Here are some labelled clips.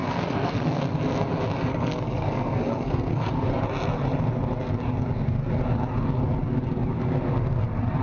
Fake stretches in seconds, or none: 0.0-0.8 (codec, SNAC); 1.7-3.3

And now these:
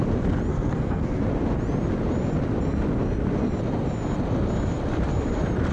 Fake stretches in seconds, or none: 0.5-1.2 (codec, SNAC)

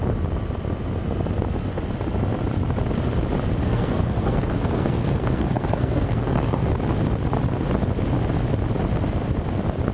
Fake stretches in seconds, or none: 3.6-6.7 (codec, SNAC)

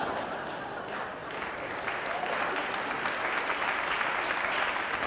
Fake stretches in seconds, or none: none